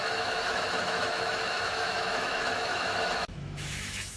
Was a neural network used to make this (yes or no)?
yes